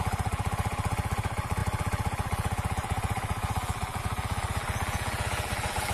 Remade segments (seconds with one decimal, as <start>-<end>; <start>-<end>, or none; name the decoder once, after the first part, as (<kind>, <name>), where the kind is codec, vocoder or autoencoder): 0.0-5.9 (vocoder, BigVGAN v2)